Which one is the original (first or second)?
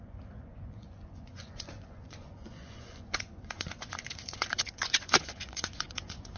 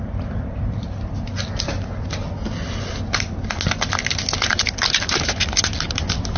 second